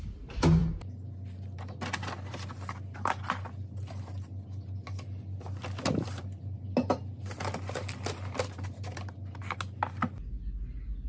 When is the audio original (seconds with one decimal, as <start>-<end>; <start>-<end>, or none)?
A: 0.0-11.1